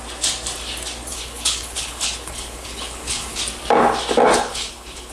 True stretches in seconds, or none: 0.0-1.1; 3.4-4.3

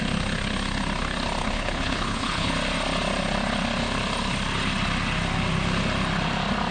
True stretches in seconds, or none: 0.0-1.4; 2.5-6.7